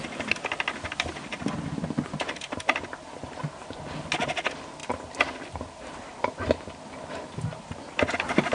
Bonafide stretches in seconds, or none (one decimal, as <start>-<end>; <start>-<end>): 0.0-8.5